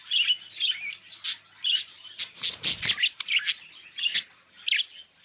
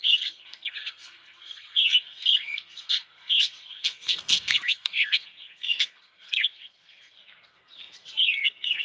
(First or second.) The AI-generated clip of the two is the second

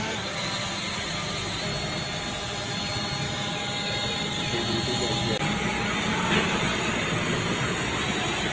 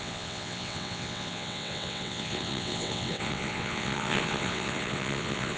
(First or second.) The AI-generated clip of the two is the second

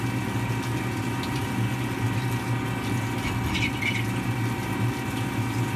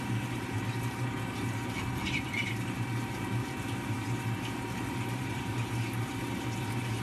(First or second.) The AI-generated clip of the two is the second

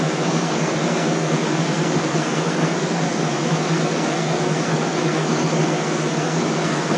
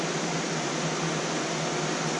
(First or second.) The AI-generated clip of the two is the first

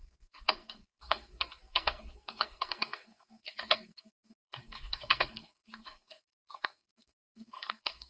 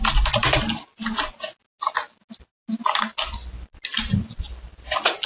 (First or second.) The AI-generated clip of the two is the first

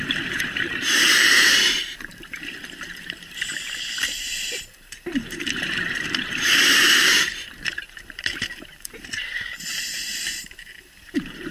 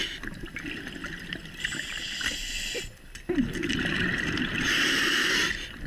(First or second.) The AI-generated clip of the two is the first